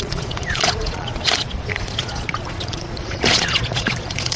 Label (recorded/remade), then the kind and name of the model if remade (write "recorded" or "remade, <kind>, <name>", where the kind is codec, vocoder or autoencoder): remade, vocoder, Vocos